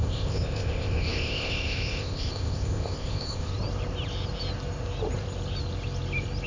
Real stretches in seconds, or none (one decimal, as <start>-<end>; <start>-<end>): 3.5-6.5